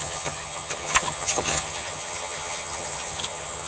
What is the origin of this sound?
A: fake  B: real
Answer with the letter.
A